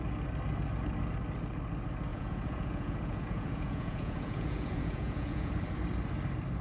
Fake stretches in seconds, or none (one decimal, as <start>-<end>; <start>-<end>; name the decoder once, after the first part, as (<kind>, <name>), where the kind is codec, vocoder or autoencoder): 2.1-5.5 (vocoder, Vocos)